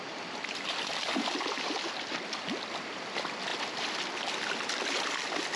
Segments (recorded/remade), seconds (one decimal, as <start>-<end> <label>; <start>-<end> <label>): 0.0-5.6 recorded